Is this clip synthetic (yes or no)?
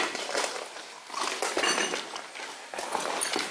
no